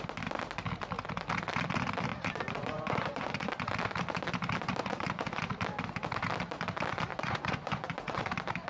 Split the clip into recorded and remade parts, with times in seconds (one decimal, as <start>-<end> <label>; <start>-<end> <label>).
0.0-2.1 recorded; 2.1-3.5 remade; 3.5-4.8 recorded; 4.8-5.4 remade; 5.4-7.1 recorded; 7.1-8.2 remade; 8.2-8.7 recorded